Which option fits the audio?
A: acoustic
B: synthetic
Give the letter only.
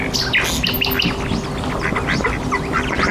A